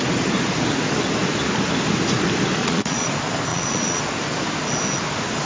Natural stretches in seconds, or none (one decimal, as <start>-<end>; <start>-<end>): 0.0-2.6; 3.1-3.5; 4.0-5.5